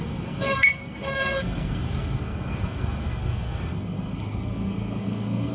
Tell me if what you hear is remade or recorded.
remade